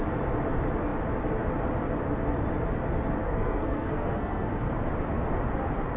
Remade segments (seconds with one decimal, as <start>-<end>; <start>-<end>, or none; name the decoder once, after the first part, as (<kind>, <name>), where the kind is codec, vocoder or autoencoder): 3.2-4.7 (codec, SNAC)